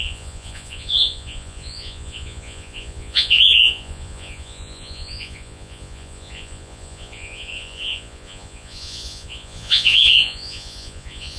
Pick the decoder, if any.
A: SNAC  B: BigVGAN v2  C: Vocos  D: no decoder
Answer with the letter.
C